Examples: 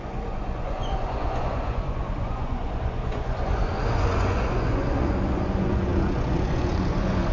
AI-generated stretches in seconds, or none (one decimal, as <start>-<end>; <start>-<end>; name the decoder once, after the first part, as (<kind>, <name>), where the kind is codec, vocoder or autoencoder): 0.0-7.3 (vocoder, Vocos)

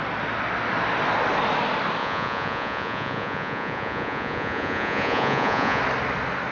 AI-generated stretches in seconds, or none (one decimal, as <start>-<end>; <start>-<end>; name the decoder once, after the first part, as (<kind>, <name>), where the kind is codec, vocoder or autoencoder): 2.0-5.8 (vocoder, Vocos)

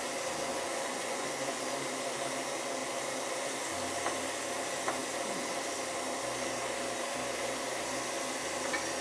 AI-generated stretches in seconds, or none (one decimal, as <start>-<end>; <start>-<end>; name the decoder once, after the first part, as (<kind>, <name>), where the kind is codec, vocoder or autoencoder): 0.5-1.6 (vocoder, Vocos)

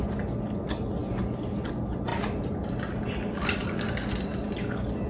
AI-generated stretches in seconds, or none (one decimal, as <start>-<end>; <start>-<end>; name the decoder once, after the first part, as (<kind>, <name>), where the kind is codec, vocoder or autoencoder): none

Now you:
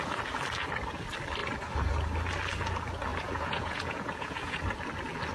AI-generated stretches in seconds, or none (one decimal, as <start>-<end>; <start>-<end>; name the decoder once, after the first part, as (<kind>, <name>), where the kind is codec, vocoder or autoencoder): 3.1-4.6 (vocoder, Vocos)